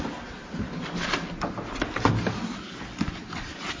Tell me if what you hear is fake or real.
real